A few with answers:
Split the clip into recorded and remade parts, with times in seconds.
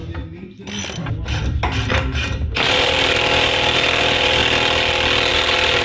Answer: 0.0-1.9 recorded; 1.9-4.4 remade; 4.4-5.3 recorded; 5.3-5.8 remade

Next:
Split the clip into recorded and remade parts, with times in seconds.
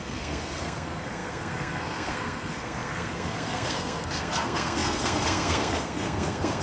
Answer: 0.0-6.6 remade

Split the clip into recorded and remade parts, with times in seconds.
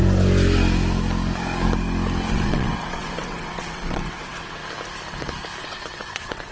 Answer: 0.0-2.3 recorded; 2.3-4.6 remade; 4.6-5.6 recorded; 5.6-6.5 remade